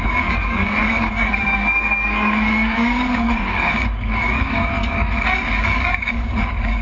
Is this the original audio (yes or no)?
no